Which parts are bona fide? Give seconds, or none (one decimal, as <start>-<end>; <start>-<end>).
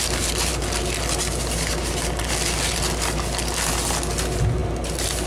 0.0-5.3